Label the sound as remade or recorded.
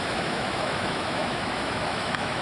remade